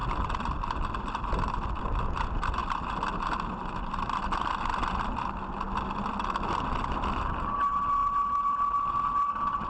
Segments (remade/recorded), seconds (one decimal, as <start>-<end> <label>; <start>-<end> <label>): 0.0-9.7 recorded